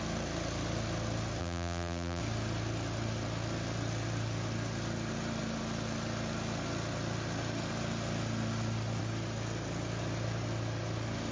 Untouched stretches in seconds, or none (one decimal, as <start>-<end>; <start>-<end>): 0.0-1.4; 2.2-11.3